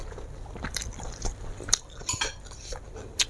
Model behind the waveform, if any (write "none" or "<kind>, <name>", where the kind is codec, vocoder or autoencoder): none